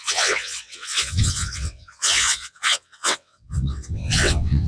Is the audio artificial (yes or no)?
yes